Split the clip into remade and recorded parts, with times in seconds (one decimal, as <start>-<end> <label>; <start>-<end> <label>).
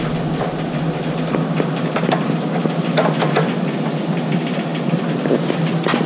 0.0-6.1 recorded